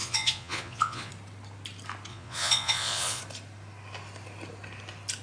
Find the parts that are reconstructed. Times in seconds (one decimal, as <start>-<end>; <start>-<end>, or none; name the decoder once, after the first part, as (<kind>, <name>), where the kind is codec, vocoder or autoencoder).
0.0-1.1 (vocoder, Vocos); 2.1-3.2